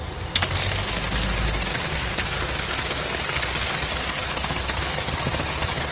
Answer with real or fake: real